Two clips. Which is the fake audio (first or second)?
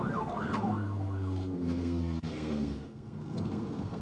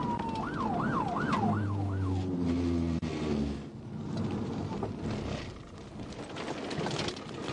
first